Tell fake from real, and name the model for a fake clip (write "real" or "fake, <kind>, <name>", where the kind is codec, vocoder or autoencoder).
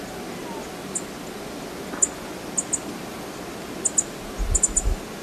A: real